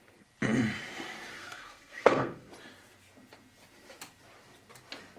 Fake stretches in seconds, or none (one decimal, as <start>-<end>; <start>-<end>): 1.3-2.5